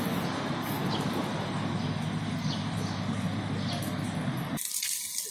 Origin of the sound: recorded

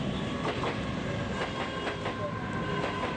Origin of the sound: recorded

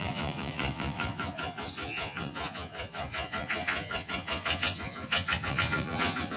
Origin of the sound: remade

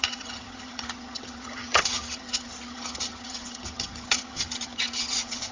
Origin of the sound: remade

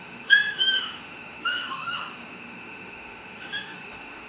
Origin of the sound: remade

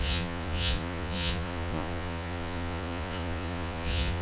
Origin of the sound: remade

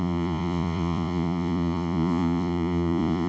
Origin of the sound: remade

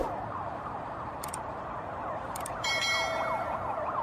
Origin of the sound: remade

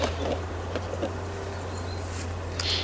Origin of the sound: recorded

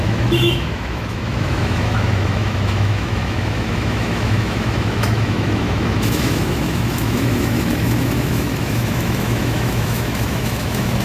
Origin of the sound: remade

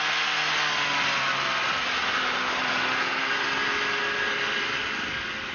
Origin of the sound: recorded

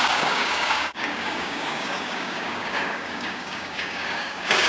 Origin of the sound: remade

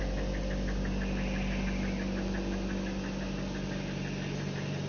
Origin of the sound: recorded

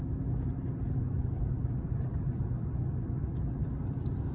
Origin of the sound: recorded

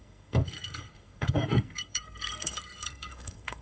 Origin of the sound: remade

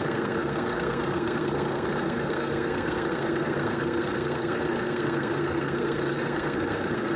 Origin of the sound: remade